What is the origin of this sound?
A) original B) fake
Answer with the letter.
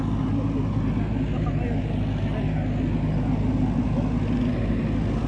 A